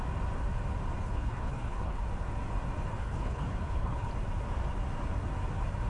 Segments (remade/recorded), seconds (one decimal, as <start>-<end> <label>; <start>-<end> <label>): 0.0-1.0 recorded; 1.0-2.0 remade; 2.0-2.9 recorded; 2.9-4.1 remade; 4.1-5.9 recorded